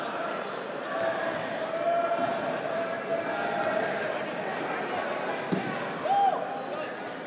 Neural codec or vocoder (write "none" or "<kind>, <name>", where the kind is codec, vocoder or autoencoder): none